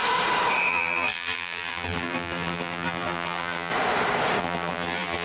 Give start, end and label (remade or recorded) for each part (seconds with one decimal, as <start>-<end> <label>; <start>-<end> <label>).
0.0-0.7 recorded; 0.7-3.7 remade; 3.7-4.4 recorded; 4.4-5.2 remade